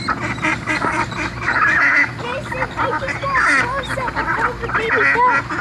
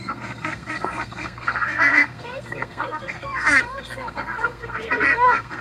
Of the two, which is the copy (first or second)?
second